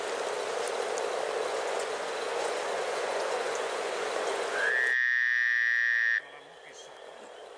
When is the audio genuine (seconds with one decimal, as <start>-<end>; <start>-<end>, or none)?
0.0-1.5; 4.7-7.6